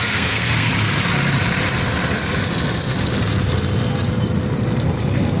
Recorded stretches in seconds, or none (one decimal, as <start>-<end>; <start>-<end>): 0.7-5.4